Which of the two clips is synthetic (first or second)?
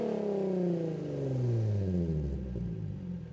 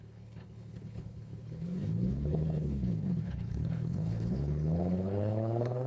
second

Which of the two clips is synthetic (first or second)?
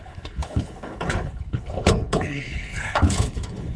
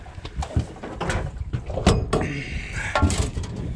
first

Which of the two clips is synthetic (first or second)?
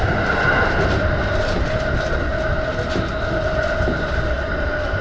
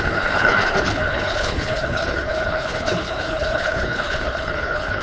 second